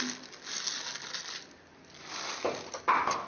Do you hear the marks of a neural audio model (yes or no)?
no